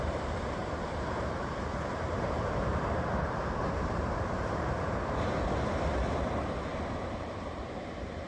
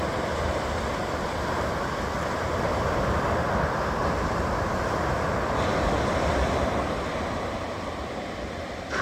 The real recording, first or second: second